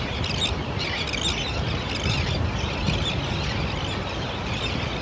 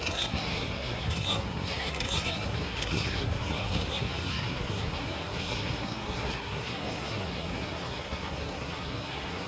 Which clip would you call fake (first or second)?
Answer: second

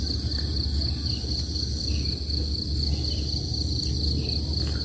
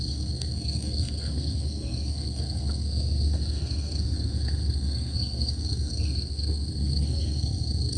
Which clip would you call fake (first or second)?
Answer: second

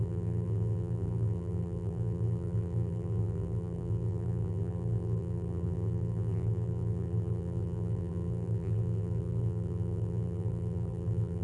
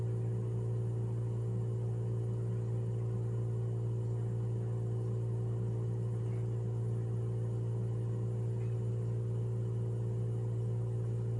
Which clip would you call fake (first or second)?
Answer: first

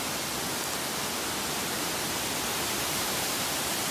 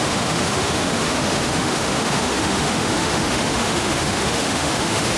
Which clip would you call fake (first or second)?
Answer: second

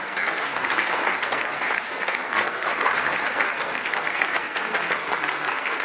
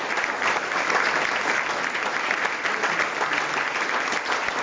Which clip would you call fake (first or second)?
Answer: first